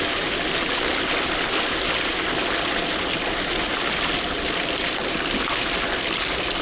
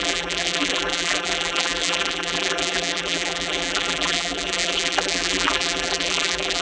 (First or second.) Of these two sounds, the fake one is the second